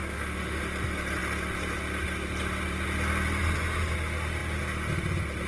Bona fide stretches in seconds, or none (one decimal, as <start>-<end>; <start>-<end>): 0.6-5.5